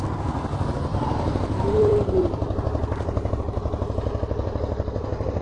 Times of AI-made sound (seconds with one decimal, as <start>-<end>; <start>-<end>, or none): 0.9-3.4